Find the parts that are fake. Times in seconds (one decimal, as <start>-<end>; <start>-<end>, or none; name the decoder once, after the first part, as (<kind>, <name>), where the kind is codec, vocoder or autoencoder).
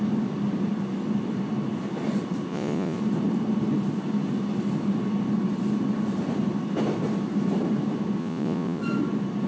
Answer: 2.5-3.0 (vocoder, Vocos); 8.2-8.8